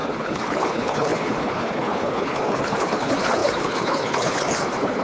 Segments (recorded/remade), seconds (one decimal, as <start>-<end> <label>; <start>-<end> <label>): 0.0-5.0 remade